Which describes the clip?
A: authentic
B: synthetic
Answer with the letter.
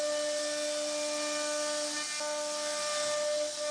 A